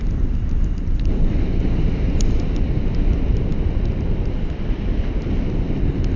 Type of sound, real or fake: real